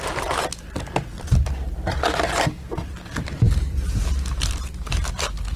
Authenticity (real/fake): real